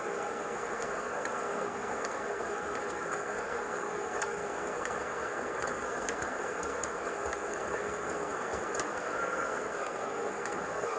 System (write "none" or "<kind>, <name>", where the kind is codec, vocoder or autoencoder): codec, SNAC